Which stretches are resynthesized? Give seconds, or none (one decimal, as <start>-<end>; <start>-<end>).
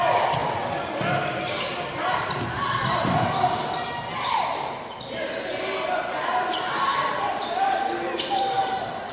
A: none